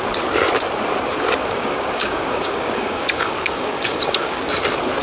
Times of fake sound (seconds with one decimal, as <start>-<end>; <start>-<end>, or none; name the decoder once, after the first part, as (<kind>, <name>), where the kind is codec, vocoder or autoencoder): 1.4-4.4 (codec, DAC)